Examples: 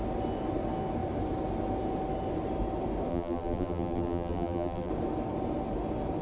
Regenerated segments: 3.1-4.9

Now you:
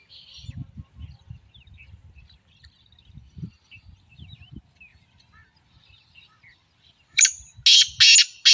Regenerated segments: 4.9-7.5

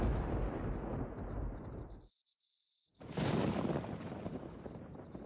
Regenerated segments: none

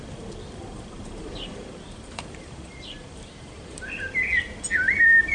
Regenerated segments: 0.7-3.9

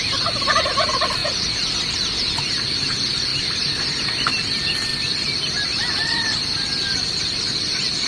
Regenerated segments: none

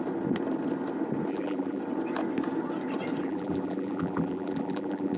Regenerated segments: 1.3-1.8; 3.2-5.2

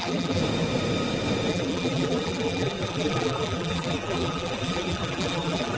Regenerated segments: 0.0-0.4; 1.5-5.8